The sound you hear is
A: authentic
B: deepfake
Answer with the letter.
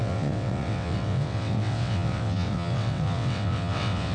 B